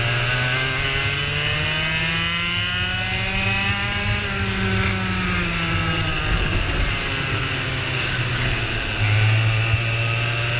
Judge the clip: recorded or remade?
recorded